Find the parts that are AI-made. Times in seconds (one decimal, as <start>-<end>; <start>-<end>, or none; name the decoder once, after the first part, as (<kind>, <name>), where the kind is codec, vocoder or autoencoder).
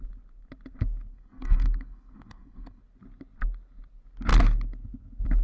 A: 1.1-2.8 (codec, SNAC)